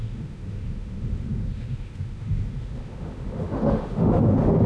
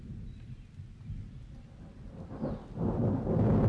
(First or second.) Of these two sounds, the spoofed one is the first